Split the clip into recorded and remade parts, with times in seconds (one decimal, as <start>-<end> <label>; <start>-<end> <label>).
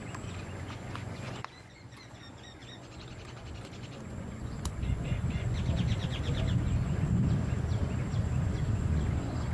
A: 0.0-9.5 remade